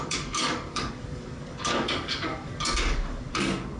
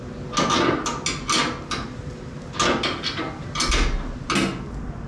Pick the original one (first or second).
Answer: second